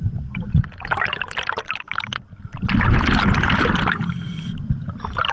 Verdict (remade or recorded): recorded